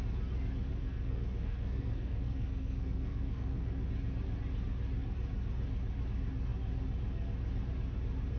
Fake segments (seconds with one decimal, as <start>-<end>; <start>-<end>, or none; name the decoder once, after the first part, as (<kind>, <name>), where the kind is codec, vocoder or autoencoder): 0.7-3.9 (codec, SNAC)